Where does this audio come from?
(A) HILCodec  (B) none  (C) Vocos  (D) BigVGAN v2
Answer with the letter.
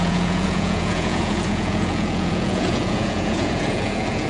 C